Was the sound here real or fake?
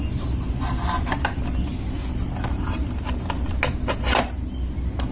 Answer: real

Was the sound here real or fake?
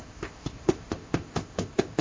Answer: fake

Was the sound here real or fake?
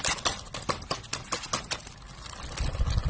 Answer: real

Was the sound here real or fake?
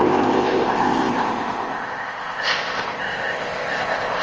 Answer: fake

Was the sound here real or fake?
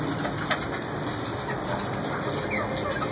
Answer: real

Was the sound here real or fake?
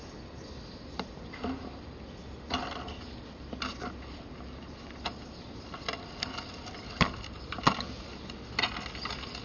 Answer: real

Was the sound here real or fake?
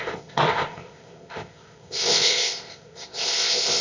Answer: fake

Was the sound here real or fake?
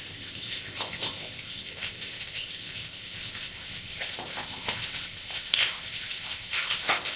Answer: fake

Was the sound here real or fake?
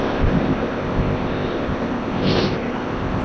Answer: fake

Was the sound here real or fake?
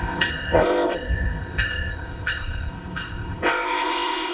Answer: fake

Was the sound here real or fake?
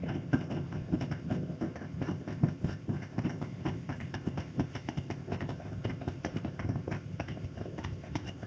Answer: fake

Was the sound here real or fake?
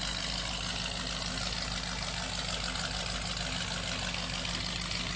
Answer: real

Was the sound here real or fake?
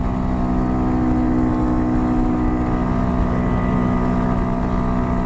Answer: real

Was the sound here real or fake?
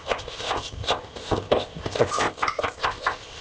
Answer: fake